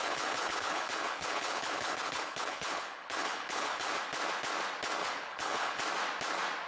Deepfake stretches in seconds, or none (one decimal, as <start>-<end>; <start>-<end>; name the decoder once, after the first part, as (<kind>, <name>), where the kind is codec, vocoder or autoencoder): 0.0-4.0 (codec, HILCodec); 5.0-5.8

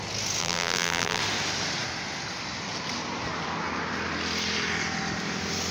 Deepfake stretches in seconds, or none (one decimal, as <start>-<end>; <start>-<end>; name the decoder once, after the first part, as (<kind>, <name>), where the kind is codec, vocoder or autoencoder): 0.4-1.2 (vocoder, BigVGAN v2)

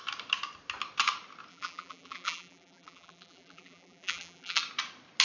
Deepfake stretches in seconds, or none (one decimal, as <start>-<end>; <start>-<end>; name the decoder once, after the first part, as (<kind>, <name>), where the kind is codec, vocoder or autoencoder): 1.5-4.6 (vocoder, BigVGAN v2)

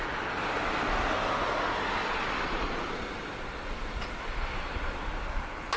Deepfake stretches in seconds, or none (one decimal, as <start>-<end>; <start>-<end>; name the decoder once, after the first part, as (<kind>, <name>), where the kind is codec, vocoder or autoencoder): 2.0-3.1 (vocoder, Vocos)